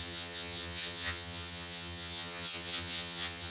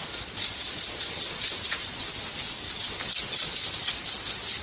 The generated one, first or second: first